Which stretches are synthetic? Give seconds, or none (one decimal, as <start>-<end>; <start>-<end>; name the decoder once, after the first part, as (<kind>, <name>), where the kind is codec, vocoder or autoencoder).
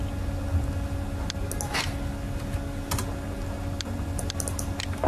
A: none